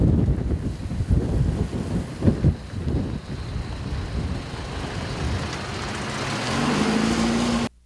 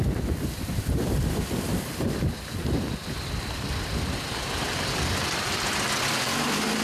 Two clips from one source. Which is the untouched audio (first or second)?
first